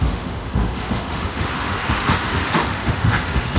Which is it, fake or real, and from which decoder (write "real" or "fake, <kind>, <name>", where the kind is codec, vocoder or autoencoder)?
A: fake, autoencoder, DAC-VAE